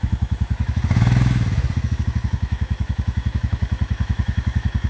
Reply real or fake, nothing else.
fake